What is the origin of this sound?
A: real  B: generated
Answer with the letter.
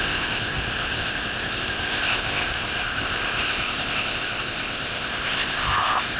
B